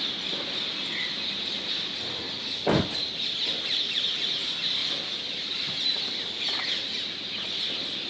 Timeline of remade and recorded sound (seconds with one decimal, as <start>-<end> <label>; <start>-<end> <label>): 0.0-8.1 recorded